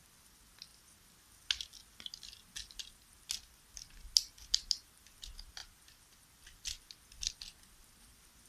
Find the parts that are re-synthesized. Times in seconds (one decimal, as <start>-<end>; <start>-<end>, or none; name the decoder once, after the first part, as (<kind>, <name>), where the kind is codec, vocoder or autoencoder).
none